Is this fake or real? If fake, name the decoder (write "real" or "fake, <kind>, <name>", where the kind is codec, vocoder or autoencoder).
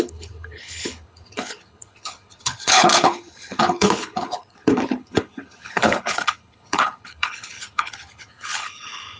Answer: fake, codec, HILCodec